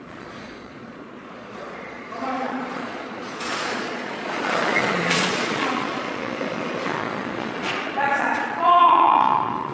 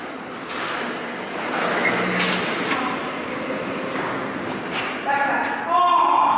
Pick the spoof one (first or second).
first